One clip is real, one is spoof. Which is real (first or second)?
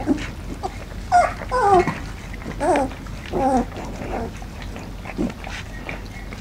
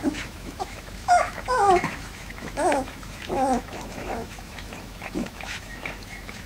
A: first